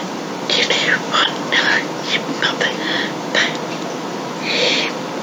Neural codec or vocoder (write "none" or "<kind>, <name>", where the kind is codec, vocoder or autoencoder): none